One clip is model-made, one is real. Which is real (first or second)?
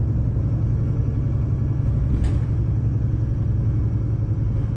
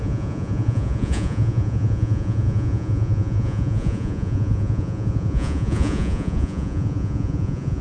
first